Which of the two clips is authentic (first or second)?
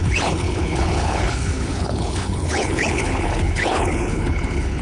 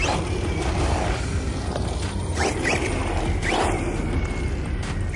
second